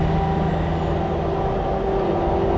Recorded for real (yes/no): yes